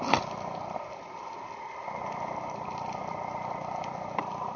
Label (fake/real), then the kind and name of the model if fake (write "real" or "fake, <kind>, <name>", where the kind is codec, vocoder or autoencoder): real